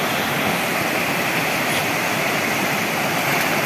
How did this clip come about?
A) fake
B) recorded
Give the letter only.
B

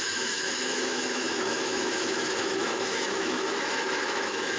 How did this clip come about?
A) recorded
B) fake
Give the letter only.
B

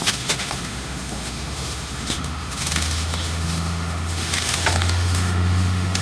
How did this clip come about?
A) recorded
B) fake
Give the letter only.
B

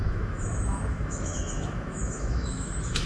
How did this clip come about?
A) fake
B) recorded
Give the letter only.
A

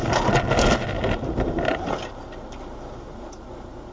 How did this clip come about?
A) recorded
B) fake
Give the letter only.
A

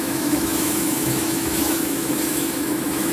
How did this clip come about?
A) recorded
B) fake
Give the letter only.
B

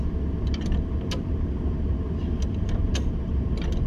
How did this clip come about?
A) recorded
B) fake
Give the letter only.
A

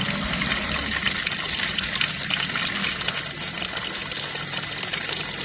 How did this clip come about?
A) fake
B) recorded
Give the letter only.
B